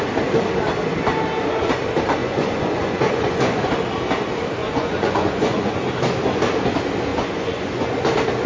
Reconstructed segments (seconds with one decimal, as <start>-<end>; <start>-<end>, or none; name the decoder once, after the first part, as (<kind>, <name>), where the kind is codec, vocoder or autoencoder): 2.2-3.7 (vocoder, Vocos); 4.6-5.8; 7.1-7.9